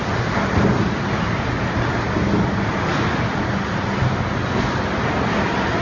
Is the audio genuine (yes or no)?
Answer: yes